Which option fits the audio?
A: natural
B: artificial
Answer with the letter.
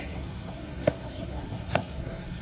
B